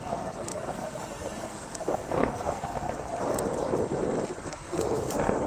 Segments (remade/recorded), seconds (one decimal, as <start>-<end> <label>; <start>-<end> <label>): 0.0-3.1 remade; 3.1-4.4 recorded; 4.4-5.5 remade